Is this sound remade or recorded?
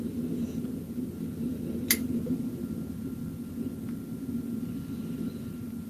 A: recorded